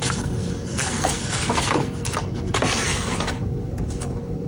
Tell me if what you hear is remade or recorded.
remade